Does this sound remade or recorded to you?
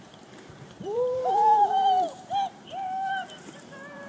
remade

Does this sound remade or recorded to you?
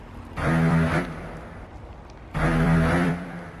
remade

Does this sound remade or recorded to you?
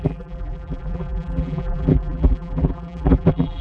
remade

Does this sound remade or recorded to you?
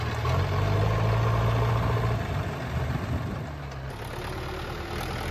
recorded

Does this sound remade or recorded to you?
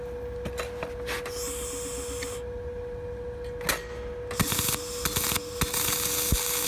recorded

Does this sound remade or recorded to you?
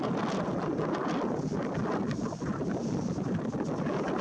recorded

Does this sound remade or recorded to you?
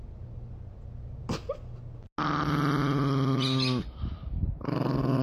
recorded